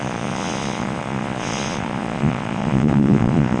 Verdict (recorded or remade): remade